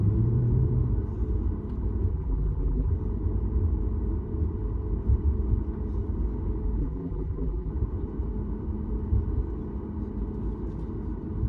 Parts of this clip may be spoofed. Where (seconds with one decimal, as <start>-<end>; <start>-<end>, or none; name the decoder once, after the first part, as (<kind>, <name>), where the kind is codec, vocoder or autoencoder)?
2.1-2.9 (vocoder, BigVGAN v2); 6.8-7.7